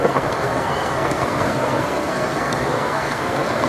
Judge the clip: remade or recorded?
remade